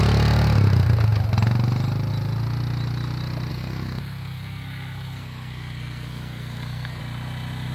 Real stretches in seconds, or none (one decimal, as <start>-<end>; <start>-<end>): 0.0-3.5; 7.0-7.7